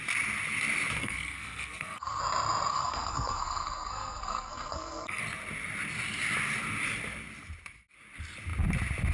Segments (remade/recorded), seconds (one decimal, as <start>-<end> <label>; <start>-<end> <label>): 0.0-1.0 recorded; 1.0-2.2 remade; 2.2-2.7 recorded; 2.7-5.2 remade; 5.2-9.1 recorded